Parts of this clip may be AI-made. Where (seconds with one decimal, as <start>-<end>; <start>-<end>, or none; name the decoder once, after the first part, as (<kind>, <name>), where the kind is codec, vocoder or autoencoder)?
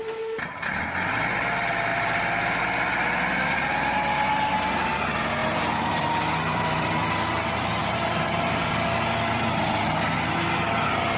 1.9-2.6 (vocoder, BigVGAN v2); 4.3-4.9; 5.4-6.1; 7.8-8.7